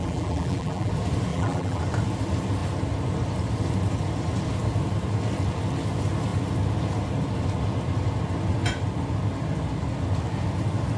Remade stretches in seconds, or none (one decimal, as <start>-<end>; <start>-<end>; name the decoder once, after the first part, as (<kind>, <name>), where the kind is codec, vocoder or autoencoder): 0.0-0.9 (vocoder, BigVGAN v2); 1.3-1.8